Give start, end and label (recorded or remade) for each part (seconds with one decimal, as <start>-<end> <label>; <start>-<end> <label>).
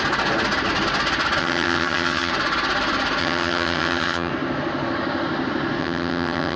0.0-1.4 recorded; 1.4-2.3 remade; 2.3-3.2 recorded; 3.2-4.3 remade; 4.3-5.8 recorded; 5.8-6.6 remade